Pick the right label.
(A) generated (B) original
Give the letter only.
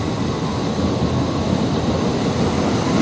B